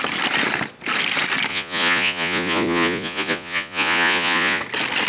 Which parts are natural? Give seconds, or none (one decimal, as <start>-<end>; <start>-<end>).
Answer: 0.0-1.5; 4.6-5.1